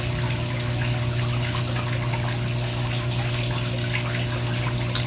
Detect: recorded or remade recorded